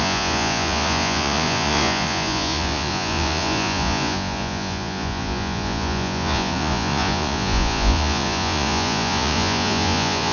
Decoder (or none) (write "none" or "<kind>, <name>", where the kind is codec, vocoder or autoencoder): vocoder, Vocos